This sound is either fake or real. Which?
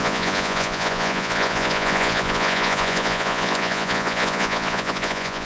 fake